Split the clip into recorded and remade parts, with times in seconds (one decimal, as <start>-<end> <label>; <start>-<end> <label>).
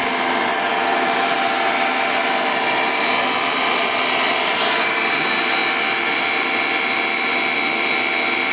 0.0-0.5 recorded; 0.5-1.3 remade; 1.3-8.5 recorded